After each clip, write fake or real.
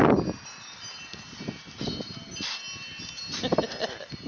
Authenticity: real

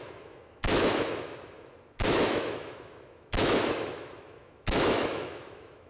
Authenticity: fake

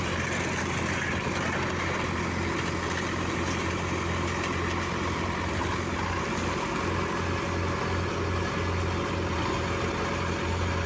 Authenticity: real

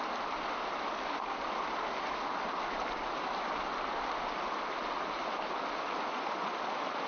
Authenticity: real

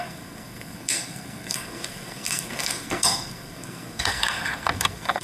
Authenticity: fake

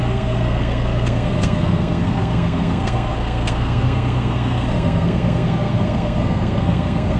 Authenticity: fake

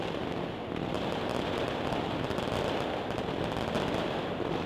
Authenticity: real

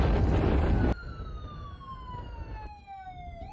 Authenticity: real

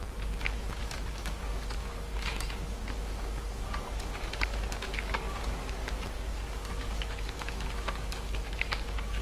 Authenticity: fake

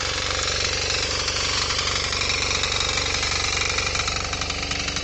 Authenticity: real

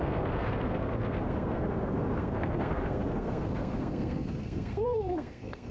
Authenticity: fake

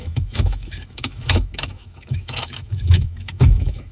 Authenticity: fake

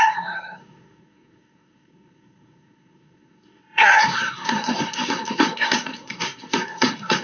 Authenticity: fake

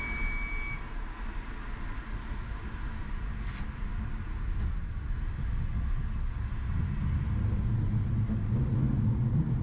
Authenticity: real